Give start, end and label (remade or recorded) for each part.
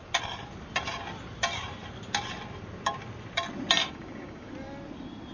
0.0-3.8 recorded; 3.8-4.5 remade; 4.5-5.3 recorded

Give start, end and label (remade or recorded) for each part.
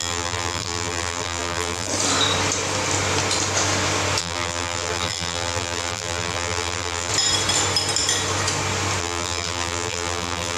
0.0-1.9 remade; 1.9-4.2 recorded; 4.2-7.1 remade; 7.1-9.0 recorded; 9.0-10.6 remade